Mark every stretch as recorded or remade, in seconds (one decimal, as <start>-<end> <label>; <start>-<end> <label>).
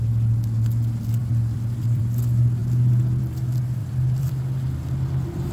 0.0-1.2 recorded; 1.2-2.0 remade; 2.0-3.8 recorded; 3.8-4.3 remade; 4.3-5.5 recorded